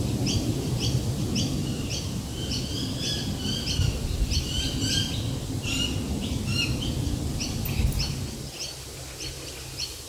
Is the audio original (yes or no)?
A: yes